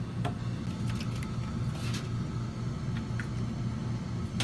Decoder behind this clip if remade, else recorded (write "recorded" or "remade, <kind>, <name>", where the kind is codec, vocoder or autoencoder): recorded